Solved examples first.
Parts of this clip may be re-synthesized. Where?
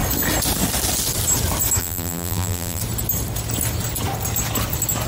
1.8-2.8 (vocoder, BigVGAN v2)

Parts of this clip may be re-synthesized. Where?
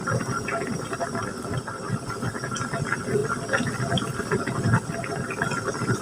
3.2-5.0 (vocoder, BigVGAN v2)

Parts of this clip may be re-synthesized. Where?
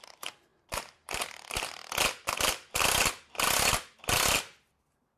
0.0-1.8 (vocoder, BigVGAN v2)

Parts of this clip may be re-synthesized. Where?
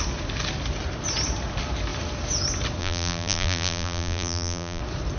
2.8-4.8 (vocoder, BigVGAN v2)